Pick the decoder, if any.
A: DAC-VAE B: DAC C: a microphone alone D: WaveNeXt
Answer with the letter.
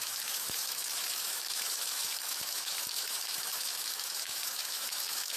A